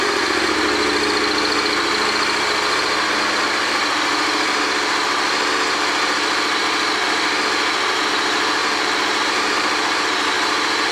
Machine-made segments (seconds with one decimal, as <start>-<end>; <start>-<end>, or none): 8.6-10.0